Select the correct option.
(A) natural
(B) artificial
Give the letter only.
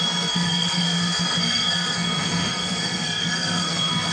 B